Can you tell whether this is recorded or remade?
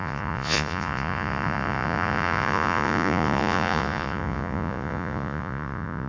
remade